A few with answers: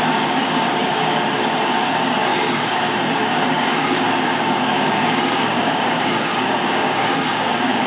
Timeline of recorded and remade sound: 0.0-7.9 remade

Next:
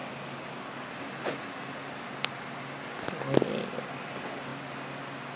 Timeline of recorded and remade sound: 0.0-5.4 recorded

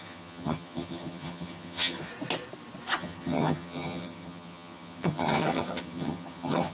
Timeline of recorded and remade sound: 0.0-2.1 remade; 2.1-3.0 recorded; 3.0-6.7 remade

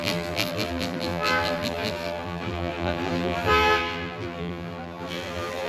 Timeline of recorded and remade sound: 0.0-5.7 remade

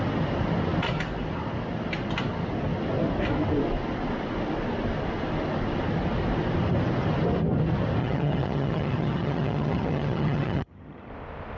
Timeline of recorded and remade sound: 0.0-8.0 recorded; 8.0-11.1 remade; 11.1-11.6 recorded